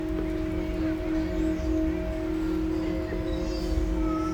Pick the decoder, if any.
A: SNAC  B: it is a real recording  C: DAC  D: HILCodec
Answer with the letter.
B